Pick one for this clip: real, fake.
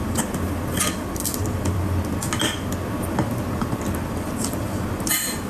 real